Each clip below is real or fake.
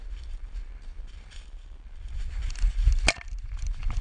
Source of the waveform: real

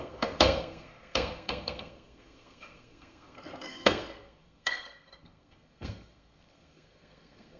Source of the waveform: fake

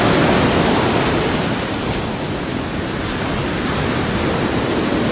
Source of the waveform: real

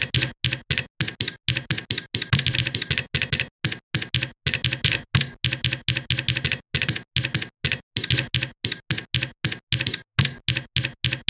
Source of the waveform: real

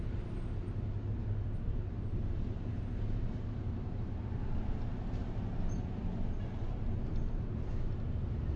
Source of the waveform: real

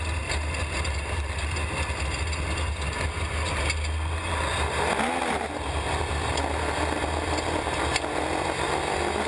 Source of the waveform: real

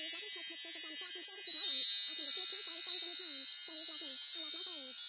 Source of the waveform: real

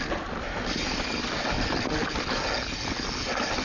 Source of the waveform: real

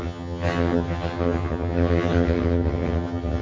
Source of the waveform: fake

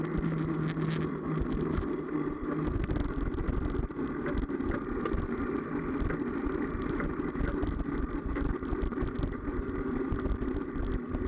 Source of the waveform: real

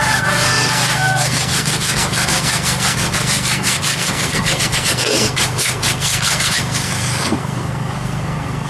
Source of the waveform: fake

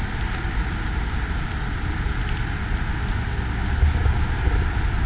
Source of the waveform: real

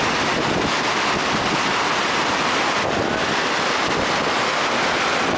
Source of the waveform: real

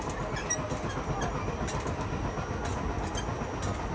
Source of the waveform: real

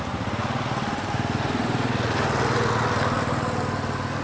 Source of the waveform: real